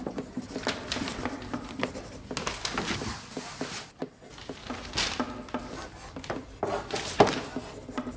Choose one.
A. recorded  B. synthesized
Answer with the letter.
A